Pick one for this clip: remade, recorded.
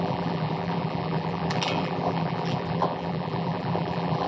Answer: remade